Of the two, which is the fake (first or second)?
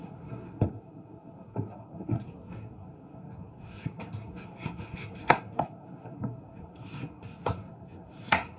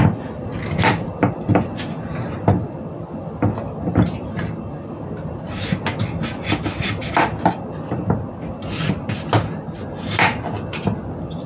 first